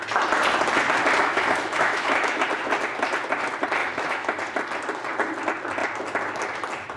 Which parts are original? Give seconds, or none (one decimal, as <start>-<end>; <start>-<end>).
0.0-1.2; 2.4-3.8; 4.3-7.0